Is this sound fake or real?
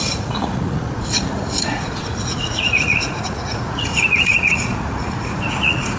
fake